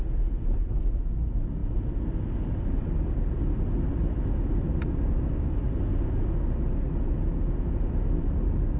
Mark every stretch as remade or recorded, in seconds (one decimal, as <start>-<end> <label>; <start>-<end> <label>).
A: 0.0-8.8 recorded